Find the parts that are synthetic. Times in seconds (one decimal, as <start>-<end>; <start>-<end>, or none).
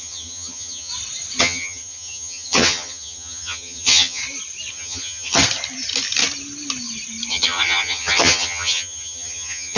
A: 0.0-0.9; 1.4-4.2; 4.7-5.4; 7.3-9.8